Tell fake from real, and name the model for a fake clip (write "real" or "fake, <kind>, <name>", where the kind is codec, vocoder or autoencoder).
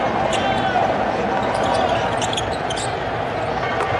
real